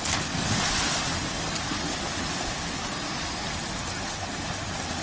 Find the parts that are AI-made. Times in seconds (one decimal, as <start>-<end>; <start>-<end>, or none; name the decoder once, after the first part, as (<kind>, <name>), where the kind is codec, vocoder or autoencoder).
none